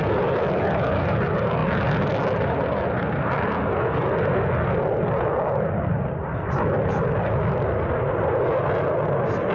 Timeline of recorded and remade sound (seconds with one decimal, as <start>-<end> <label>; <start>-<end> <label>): 0.0-9.5 recorded